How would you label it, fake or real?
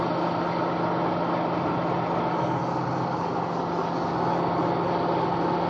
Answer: real